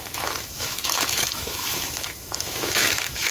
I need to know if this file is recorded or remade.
remade